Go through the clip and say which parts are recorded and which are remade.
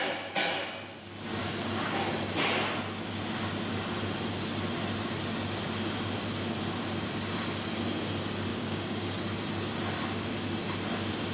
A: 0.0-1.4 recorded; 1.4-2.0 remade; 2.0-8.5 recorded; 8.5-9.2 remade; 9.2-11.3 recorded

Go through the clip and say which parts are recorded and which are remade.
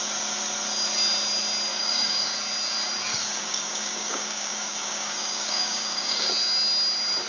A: 0.0-1.7 recorded; 1.7-2.3 remade; 2.3-3.1 recorded; 3.1-6.3 remade; 6.3-7.3 recorded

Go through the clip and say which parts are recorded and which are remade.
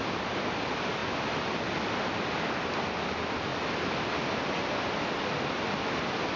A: 0.0-6.4 recorded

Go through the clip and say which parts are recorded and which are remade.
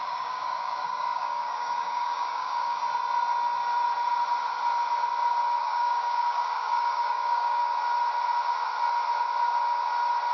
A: 0.0-2.8 remade; 2.8-5.6 recorded; 5.6-7.6 remade; 7.6-10.3 recorded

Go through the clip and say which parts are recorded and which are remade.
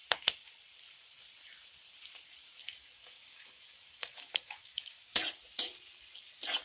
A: 0.0-2.6 recorded; 2.6-5.2 remade; 5.2-6.6 recorded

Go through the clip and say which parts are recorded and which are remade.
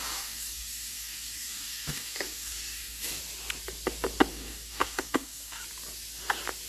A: 0.0-3.2 remade; 3.2-4.3 recorded; 4.3-5.6 remade; 5.6-6.7 recorded